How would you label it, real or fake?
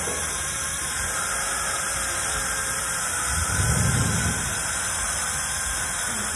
real